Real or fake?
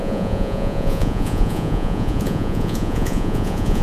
fake